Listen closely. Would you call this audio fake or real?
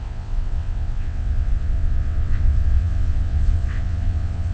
fake